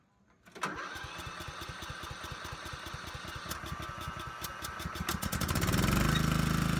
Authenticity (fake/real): real